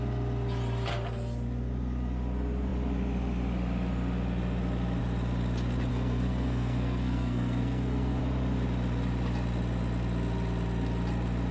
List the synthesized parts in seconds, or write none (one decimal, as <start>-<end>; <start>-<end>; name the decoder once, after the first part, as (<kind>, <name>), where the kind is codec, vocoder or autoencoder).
5.9-8.2 (codec, SNAC)

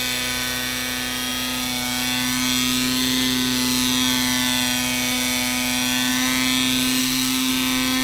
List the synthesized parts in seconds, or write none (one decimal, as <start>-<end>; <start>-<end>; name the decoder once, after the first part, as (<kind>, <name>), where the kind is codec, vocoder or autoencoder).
7.0-7.5 (codec, SNAC)

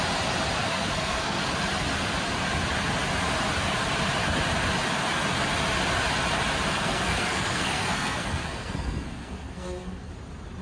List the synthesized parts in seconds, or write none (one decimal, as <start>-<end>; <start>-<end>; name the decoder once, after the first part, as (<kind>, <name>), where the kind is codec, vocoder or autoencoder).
0.6-1.4 (codec, SNAC); 6.7-10.1

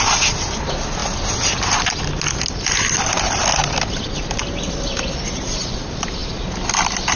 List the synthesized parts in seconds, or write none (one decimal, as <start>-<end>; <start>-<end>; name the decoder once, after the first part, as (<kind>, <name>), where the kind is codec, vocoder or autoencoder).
none

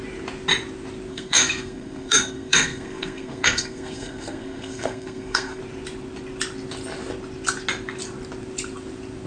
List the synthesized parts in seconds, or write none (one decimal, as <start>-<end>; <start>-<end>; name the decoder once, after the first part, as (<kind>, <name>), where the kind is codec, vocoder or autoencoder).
1.1-5.6 (codec, SNAC)

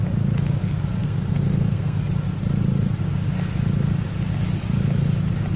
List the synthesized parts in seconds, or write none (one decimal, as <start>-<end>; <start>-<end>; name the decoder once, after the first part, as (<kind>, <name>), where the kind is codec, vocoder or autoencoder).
1.0-2.0 (codec, SNAC)

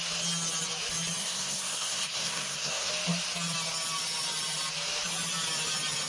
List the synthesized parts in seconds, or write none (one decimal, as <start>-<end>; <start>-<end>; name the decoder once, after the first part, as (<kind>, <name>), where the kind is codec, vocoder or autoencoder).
1.2-2.9 (codec, SNAC)